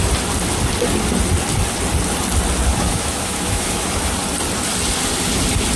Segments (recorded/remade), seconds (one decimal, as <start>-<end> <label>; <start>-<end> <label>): 0.0-2.7 recorded; 2.7-4.1 remade; 4.1-5.8 recorded